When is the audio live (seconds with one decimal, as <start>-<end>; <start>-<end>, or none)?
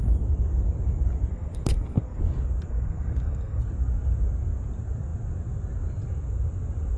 0.0-1.3; 2.2-2.7; 3.6-7.0